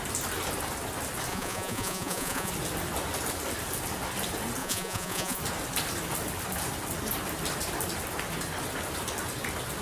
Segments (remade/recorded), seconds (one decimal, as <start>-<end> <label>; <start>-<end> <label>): 0.0-1.3 recorded; 1.3-2.5 remade; 2.5-4.6 recorded; 4.6-5.4 remade; 5.4-9.8 recorded